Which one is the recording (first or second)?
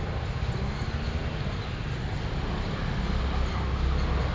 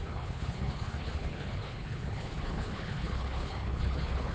first